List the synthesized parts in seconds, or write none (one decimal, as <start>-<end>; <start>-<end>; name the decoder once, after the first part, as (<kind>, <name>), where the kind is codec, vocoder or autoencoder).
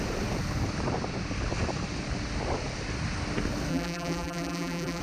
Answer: 3.7-5.0 (vocoder, BigVGAN v2)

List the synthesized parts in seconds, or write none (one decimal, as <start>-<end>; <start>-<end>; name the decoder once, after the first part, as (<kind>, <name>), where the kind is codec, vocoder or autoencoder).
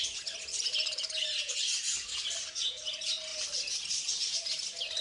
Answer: none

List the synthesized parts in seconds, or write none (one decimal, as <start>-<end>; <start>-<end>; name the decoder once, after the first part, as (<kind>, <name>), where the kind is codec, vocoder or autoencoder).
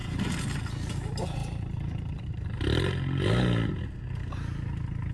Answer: 0.0-0.7 (vocoder, BigVGAN v2); 1.4-3.7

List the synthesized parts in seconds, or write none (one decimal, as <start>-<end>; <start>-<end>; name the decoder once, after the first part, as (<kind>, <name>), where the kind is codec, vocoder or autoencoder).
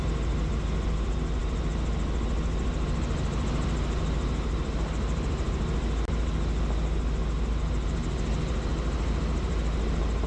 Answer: none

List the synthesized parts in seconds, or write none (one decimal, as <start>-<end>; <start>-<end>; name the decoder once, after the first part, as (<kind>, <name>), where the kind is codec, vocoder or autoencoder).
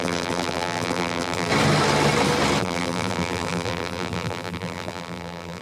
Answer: 0.0-1.5 (vocoder, BigVGAN v2); 2.6-5.6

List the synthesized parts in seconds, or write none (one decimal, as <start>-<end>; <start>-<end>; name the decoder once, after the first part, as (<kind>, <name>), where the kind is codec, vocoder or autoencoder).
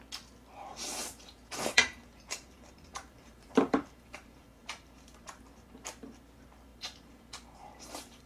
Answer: 0.7-5.4 (vocoder, BigVGAN v2); 6.7-8.3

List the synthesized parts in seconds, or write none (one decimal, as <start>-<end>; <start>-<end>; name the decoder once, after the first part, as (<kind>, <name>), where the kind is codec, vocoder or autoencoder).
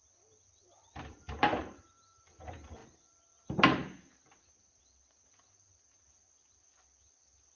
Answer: 1.5-2.2 (vocoder, BigVGAN v2)